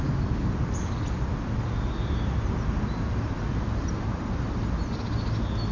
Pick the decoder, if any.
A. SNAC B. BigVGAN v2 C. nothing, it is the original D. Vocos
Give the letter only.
C